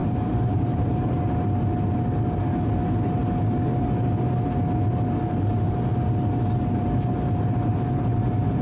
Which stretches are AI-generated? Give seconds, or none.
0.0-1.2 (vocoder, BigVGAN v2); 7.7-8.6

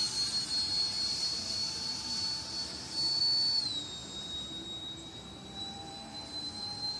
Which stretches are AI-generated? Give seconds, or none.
0.0-3.2 (vocoder, BigVGAN v2); 4.0-7.0

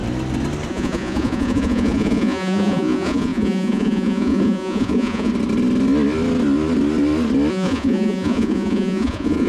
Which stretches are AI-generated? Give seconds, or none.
0.7-5.3 (vocoder, Vocos); 7.5-9.5

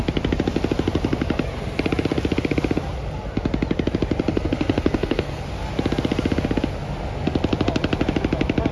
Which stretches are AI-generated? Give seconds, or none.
4.3-5.4 (codec, SNAC)